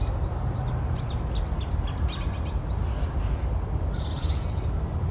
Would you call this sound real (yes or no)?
yes